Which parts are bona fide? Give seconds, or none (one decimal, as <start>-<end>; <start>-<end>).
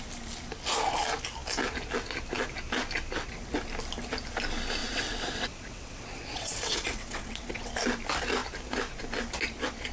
0.0-4.8; 7.7-9.9